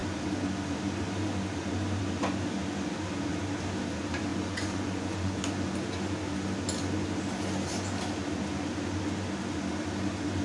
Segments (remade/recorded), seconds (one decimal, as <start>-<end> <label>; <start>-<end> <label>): 0.0-4.3 recorded; 4.3-5.4 remade; 5.4-10.4 recorded